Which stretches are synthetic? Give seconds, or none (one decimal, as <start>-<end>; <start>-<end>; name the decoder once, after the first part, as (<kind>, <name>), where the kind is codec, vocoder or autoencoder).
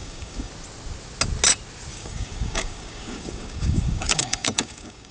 0.0-0.5 (codec, DAC); 1.9-5.1